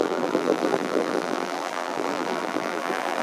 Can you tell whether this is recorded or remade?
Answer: remade